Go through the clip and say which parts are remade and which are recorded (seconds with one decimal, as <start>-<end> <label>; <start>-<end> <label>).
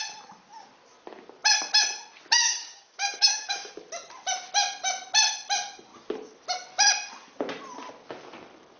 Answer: 0.0-2.4 recorded; 2.4-3.7 remade; 3.7-8.8 recorded